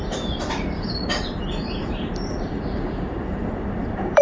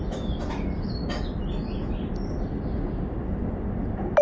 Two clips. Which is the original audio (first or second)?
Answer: second